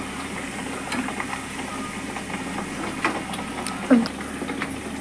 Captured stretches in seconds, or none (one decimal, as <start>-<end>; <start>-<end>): 1.7-5.0